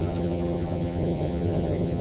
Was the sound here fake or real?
fake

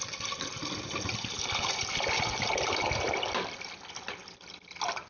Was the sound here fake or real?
real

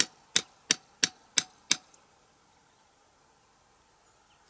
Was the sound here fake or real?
real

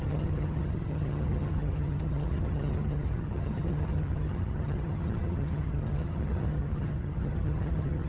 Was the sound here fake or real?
fake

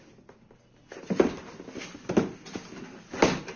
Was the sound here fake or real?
real